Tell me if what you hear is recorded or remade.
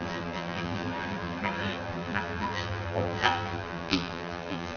remade